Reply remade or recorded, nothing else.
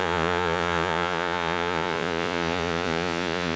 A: remade